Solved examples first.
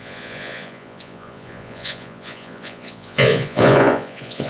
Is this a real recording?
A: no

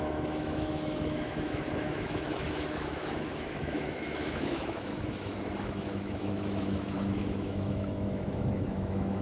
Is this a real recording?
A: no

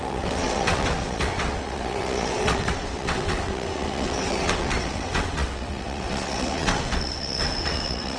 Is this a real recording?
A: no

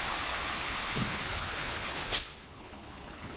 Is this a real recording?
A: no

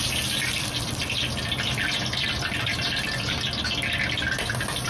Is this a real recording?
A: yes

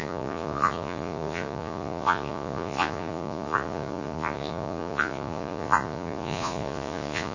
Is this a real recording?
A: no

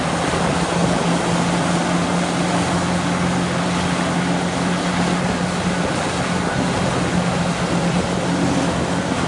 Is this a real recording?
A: yes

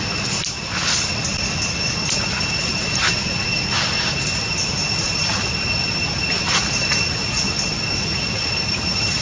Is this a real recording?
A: yes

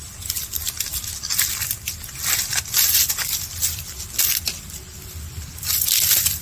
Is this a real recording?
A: yes